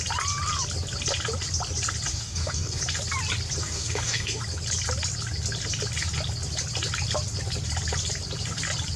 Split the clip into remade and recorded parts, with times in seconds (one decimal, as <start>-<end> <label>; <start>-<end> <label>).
0.0-2.1 recorded; 2.1-2.8 remade; 2.8-3.6 recorded; 3.6-4.4 remade; 4.4-9.0 recorded